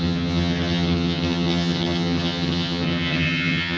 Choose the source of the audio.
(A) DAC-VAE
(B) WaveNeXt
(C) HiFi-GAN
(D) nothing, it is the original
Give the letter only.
C